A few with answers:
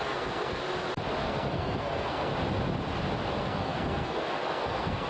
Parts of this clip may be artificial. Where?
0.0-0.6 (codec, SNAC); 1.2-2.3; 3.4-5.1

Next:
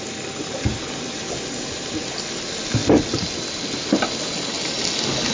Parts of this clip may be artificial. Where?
none

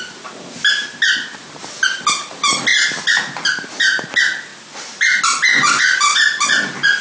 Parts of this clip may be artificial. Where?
none

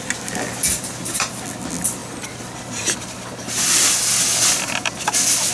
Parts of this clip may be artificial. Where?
0.7-1.3 (vocoder, BigVGAN v2)

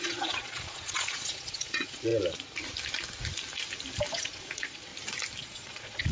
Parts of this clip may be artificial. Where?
0.0-2.1 (vocoder, Vocos); 4.1-4.9; 5.4-6.1